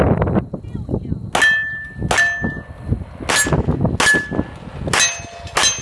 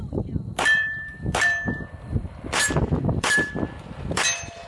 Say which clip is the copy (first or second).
second